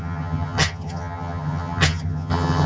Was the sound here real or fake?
fake